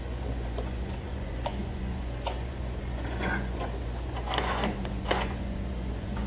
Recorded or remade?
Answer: remade